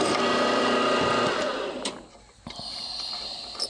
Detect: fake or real real